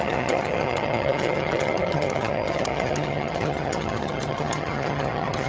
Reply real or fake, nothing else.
fake